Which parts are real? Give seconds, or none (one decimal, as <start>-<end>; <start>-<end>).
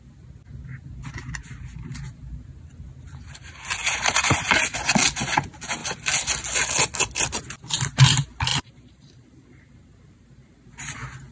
0.0-3.8; 4.6-8.5; 10.7-11.3